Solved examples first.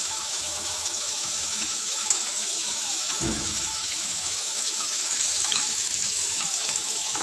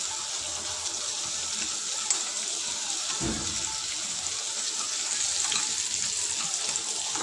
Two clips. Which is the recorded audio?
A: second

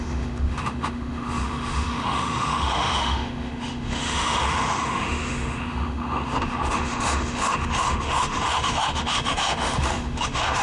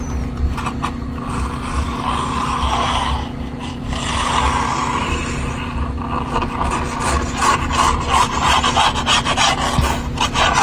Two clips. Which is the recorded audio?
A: second